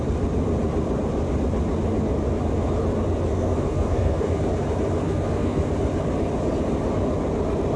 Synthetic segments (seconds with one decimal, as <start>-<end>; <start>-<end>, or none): 3.3-4.4; 5.0-5.7